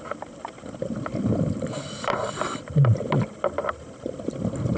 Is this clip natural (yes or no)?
yes